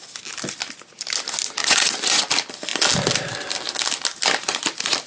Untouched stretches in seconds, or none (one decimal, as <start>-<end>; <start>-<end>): 0.0-1.6; 2.2-5.1